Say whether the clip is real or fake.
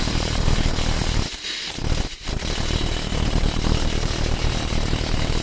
real